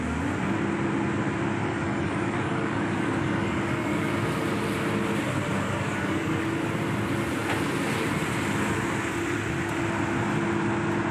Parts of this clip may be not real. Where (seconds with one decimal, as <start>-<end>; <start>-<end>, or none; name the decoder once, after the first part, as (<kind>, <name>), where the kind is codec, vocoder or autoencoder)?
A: 1.6-4.1 (codec, DAC); 5.5-6.4